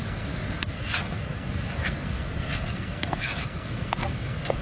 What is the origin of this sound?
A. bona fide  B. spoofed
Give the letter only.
B